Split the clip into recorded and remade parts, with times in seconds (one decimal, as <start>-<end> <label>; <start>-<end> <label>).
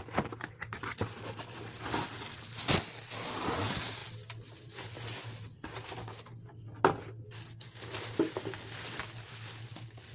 0.0-10.1 recorded